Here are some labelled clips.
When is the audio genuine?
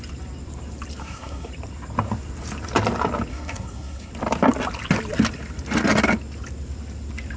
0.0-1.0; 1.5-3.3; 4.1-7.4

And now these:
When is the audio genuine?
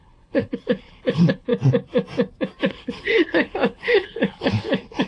1.5-2.6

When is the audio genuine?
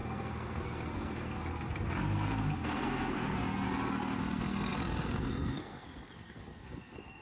none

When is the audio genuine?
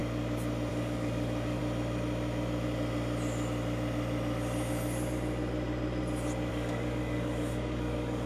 0.0-0.7; 1.6-6.5